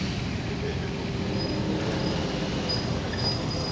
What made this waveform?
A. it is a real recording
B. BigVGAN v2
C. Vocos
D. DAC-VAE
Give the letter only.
A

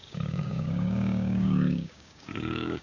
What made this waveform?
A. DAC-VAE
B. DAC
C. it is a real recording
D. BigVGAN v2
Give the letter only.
B